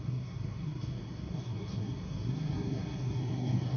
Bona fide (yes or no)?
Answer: no